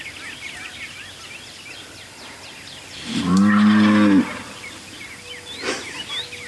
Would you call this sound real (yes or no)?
yes